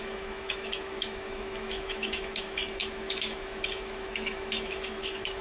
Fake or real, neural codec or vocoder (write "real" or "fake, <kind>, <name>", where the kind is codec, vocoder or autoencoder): fake, autoencoder, DAC-VAE